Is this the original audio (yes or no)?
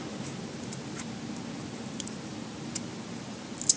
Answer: yes